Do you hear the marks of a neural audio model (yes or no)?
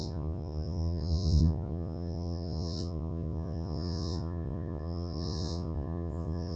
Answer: yes